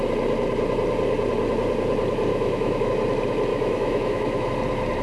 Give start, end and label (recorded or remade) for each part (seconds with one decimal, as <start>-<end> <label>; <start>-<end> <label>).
0.0-2.3 recorded; 2.3-2.9 remade; 2.9-3.5 recorded; 3.5-4.5 remade; 4.5-5.0 recorded